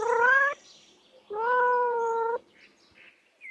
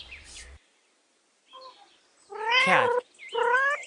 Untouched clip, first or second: second